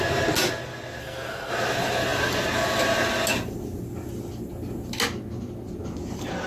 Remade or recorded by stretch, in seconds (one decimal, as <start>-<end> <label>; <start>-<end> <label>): 0.0-1.0 recorded; 1.0-1.5 remade; 1.5-6.5 recorded